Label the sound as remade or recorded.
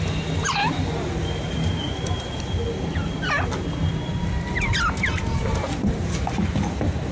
recorded